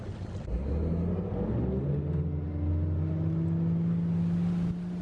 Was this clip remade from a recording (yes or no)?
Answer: no